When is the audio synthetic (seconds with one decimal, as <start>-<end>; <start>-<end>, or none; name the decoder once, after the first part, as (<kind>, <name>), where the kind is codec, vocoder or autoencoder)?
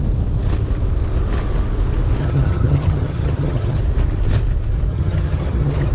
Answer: 2.2-3.8 (vocoder, HiFi-GAN); 4.9-5.9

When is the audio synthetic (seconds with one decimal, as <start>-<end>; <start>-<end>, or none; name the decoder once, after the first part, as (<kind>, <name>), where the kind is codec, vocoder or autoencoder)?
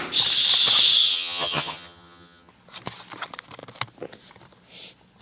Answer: 1.1-2.5 (vocoder, HiFi-GAN)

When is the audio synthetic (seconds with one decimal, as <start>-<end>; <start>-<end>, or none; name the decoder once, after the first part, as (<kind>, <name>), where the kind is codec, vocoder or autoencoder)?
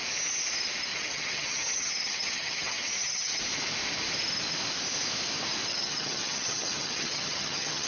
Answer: 0.9-3.3 (vocoder, HiFi-GAN); 5.7-7.9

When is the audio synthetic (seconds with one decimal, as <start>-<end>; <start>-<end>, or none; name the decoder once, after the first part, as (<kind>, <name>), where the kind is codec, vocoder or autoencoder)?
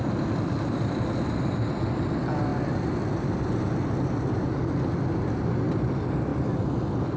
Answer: none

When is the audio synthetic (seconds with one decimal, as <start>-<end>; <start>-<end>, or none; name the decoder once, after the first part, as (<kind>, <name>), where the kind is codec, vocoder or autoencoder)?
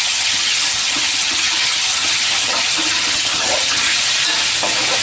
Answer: 0.0-3.9 (vocoder, HiFi-GAN)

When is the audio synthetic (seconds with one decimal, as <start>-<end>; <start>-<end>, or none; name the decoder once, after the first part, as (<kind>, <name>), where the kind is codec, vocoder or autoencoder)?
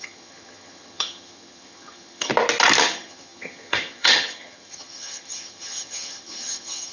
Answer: 0.0-2.3 (vocoder, HiFi-GAN); 2.8-6.9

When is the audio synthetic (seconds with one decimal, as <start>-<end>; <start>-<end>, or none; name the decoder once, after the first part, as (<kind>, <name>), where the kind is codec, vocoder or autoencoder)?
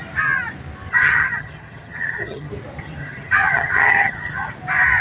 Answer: 0.9-2.5 (vocoder, HiFi-GAN); 3.0-4.5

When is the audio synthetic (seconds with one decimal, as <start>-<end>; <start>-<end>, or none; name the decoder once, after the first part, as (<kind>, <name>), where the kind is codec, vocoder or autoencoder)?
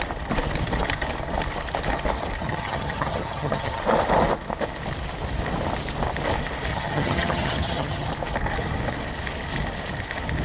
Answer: 2.4-3.8 (vocoder, HiFi-GAN); 6.7-8.1